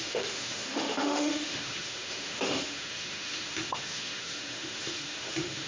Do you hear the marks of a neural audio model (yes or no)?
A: yes